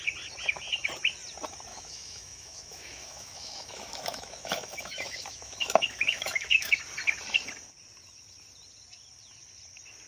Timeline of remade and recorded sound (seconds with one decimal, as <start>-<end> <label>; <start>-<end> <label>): 0.0-1.7 recorded; 1.7-6.8 remade; 6.8-10.1 recorded